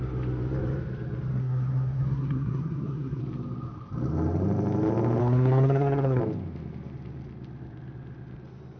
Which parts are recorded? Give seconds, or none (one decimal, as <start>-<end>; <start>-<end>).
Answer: 0.0-1.4; 3.2-5.2; 6.2-8.8